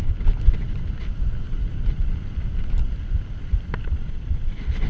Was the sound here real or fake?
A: real